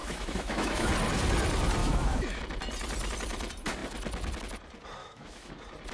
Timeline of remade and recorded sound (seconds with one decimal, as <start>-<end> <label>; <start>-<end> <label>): 0.0-0.9 remade; 0.9-1.8 recorded; 1.8-2.4 remade; 2.4-5.0 recorded; 5.0-5.5 remade; 5.5-5.9 recorded